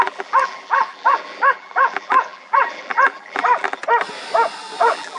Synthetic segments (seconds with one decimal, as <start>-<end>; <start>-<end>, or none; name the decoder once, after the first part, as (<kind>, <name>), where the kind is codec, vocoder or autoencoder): 0.0-3.8 (vocoder, BigVGAN v2); 4.8-5.2